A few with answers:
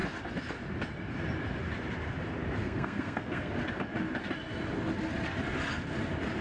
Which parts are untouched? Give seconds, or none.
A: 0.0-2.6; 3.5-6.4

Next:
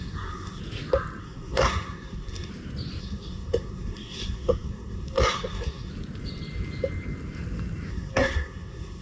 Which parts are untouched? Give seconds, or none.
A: 0.6-1.2; 2.5-3.0; 5.9-7.9

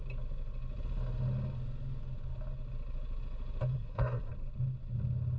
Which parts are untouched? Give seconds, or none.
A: 0.0-3.7; 4.3-5.4

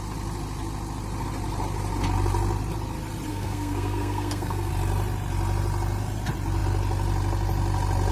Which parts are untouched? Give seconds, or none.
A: 0.0-3.3; 4.7-8.1

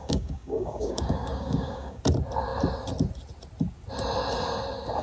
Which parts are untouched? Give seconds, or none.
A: 2.0-5.0

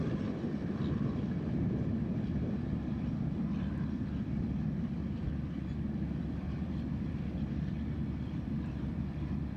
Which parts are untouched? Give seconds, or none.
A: 5.0-6.2